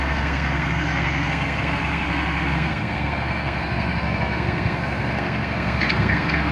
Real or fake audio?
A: fake